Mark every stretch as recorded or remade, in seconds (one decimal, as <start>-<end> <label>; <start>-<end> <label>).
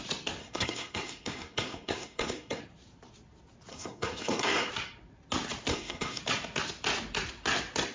0.0-0.4 recorded; 0.4-2.6 remade; 2.6-3.7 recorded; 3.7-4.7 remade; 4.7-5.7 recorded; 5.7-6.2 remade; 6.2-7.9 recorded